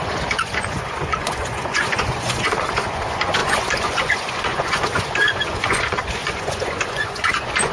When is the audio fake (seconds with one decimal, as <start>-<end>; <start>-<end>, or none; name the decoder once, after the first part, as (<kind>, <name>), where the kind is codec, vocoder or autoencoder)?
0.0-7.7 (vocoder, Vocos)